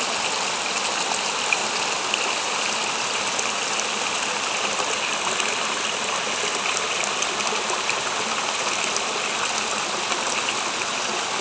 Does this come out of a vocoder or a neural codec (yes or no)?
no